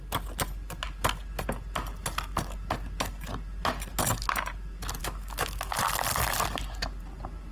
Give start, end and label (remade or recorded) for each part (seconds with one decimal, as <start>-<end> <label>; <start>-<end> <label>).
0.0-5.0 recorded; 5.0-5.8 remade; 5.8-7.5 recorded